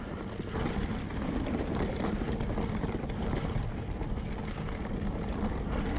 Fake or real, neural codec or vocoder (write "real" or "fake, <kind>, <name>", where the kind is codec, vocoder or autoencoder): real